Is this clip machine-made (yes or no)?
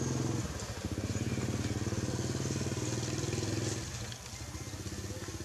no